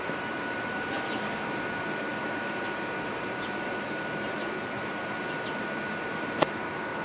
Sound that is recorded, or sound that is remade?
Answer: remade